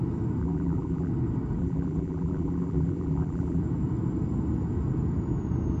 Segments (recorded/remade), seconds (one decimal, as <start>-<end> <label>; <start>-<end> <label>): 0.0-0.4 recorded; 0.4-1.1 remade; 1.1-1.6 recorded; 1.6-3.6 remade; 3.6-5.8 recorded